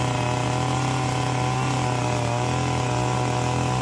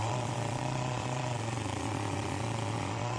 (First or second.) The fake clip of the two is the second